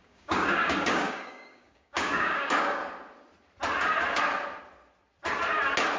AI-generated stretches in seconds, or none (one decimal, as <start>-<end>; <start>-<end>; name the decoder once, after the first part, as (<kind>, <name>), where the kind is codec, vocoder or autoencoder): 0.0-2.8 (codec, DAC)